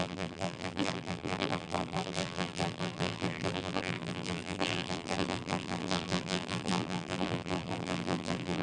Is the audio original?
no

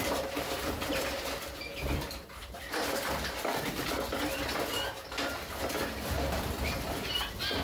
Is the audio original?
no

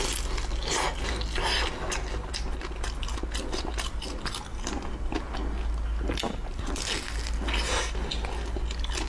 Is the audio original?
yes